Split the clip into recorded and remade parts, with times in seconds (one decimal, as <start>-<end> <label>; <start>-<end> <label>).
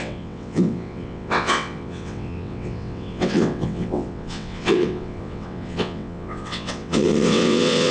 0.0-7.9 remade